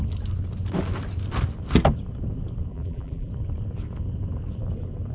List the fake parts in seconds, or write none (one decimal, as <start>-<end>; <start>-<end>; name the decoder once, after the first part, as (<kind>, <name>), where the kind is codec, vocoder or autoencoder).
2.7-3.3 (vocoder, BigVGAN v2)